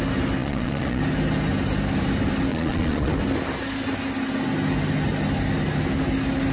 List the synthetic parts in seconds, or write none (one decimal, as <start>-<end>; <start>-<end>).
0.4-1.0; 2.5-3.1